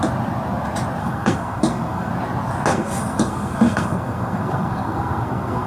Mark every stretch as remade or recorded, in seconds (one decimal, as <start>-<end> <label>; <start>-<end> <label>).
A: 0.0-1.0 recorded; 1.0-2.1 remade; 2.1-2.7 recorded; 2.7-5.7 remade